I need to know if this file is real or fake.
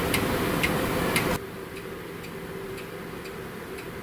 real